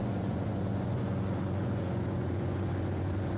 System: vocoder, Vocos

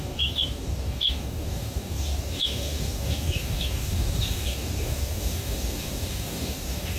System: codec, DAC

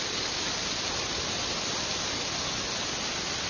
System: none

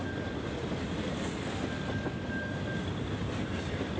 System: none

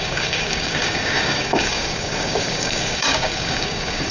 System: codec, DAC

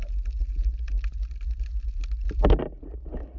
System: none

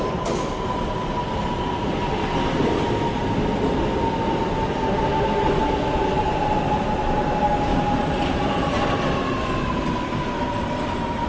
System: none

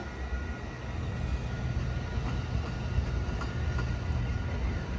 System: none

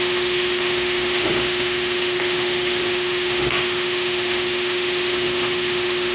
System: autoencoder, DAC-VAE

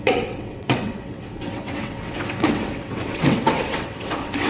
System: vocoder, WaveNeXt